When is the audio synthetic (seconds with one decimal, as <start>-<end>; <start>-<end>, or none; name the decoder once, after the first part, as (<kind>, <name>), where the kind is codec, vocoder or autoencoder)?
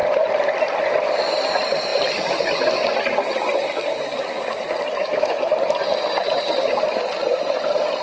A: 5.0-5.5 (autoencoder, DAC-VAE)